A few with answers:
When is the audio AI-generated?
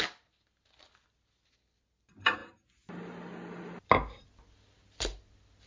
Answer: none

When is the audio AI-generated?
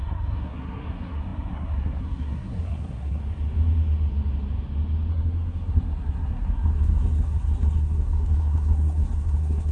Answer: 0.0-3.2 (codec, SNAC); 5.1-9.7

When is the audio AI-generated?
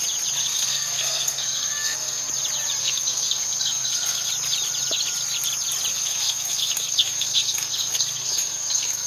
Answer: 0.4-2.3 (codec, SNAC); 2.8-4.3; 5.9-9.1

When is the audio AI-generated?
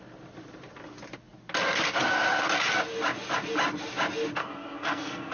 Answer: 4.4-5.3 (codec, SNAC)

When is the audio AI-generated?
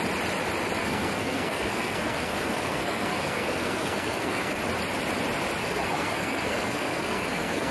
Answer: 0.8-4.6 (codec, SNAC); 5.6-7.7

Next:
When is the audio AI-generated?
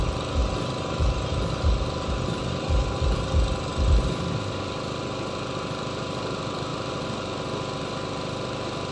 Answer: none